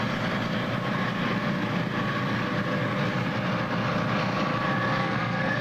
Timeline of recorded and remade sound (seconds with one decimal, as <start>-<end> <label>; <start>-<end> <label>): 0.0-5.0 recorded; 5.0-5.6 remade